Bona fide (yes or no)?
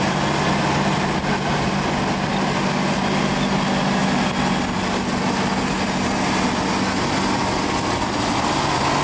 yes